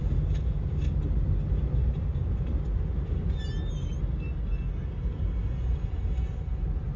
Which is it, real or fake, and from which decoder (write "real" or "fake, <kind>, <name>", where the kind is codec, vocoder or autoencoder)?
real